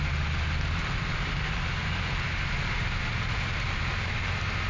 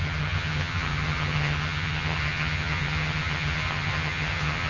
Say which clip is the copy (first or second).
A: second